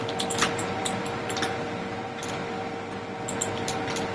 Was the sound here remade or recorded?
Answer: recorded